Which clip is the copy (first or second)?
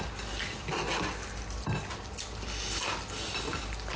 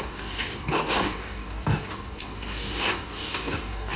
second